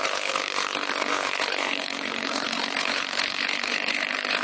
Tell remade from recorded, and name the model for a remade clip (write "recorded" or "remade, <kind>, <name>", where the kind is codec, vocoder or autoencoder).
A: remade, codec, HILCodec